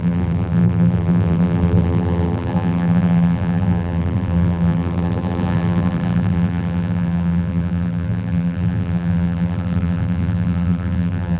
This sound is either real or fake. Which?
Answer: fake